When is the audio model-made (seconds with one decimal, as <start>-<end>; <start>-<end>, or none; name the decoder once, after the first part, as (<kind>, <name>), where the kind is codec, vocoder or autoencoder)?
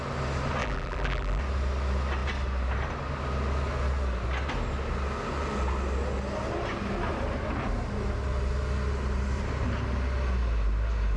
0.6-1.4 (vocoder, BigVGAN v2)